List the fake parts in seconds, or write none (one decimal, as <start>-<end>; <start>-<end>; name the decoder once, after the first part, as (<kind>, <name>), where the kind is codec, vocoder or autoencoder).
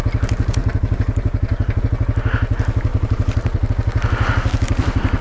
0.6-1.8 (vocoder, BigVGAN v2); 2.9-3.7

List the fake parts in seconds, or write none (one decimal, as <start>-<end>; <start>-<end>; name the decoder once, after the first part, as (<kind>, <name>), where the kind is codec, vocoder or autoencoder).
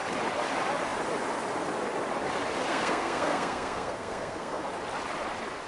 2.7-4.6 (codec, SNAC)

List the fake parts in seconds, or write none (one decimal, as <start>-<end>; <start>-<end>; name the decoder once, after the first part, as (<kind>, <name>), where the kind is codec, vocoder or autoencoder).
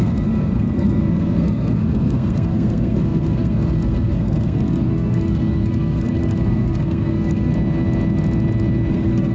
0.0-7.5 (codec, SNAC); 8.9-9.3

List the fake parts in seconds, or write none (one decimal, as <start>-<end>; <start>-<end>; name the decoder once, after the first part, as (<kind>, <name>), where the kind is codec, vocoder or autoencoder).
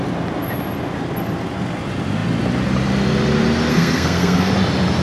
3.7-4.5 (codec, SNAC)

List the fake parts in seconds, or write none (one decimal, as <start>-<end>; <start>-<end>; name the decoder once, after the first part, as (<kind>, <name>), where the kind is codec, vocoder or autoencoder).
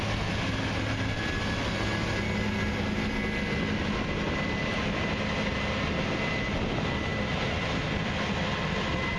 none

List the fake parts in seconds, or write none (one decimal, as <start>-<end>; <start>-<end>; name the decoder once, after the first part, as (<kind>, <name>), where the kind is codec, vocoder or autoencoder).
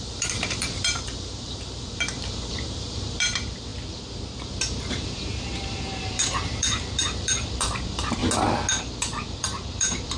0.0-3.7 (vocoder, BigVGAN v2); 4.9-8.2; 8.8-10.2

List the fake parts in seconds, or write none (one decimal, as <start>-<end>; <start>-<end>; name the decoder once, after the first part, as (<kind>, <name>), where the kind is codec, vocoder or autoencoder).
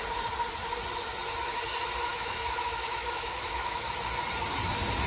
2.1-3.8 (autoencoder, DAC-VAE)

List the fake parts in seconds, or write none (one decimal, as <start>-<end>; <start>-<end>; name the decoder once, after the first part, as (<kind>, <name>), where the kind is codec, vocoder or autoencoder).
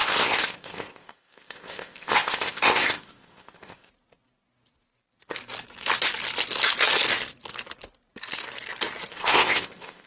0.0-3.9 (codec, ZipCodec); 9.1-10.1